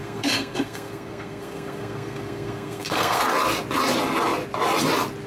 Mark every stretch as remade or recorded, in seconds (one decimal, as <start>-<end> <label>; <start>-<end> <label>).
0.0-3.2 remade; 3.2-5.3 recorded